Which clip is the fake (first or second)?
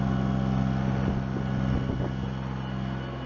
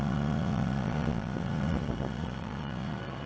second